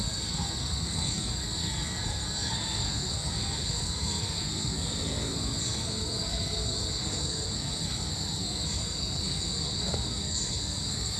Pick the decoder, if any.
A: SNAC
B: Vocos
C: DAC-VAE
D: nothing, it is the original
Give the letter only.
A